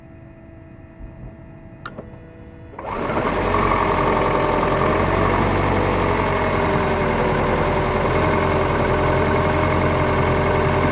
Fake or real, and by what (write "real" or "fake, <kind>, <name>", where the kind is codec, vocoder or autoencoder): real